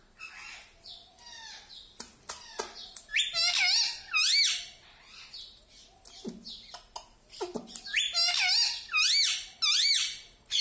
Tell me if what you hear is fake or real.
real